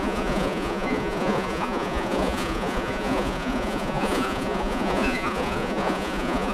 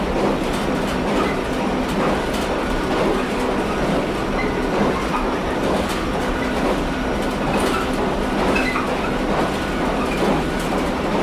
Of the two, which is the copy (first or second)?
first